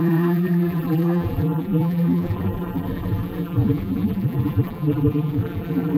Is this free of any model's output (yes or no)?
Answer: no